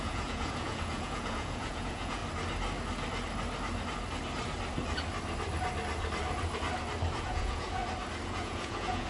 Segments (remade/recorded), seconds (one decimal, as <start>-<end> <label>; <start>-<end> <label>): 0.0-2.2 remade; 2.2-7.2 recorded; 7.2-7.8 remade; 7.8-8.3 recorded; 8.3-9.1 remade